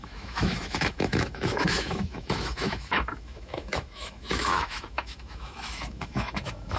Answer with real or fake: fake